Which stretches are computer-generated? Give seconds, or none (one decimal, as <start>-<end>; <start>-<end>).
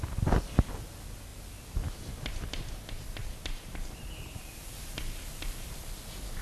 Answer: 3.2-5.8